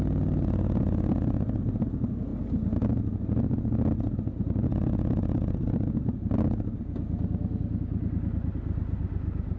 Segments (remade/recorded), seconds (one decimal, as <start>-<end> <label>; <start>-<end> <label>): 0.0-9.6 recorded